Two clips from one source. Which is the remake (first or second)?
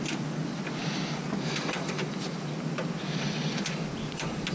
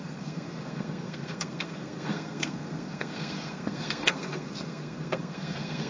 second